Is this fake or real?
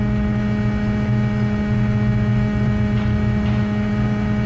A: fake